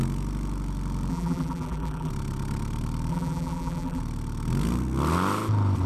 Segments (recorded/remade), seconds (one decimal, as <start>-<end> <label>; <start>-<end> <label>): 0.0-1.1 recorded; 1.1-2.1 remade; 2.1-3.1 recorded; 3.1-4.0 remade; 4.0-5.9 recorded